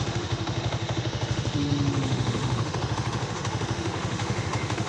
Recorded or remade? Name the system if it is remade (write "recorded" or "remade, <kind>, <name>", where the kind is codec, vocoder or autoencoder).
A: remade, autoencoder, DAC-VAE